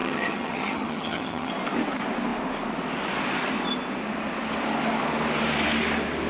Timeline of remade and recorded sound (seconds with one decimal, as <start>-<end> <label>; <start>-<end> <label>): 0.0-1.5 remade; 1.5-6.3 recorded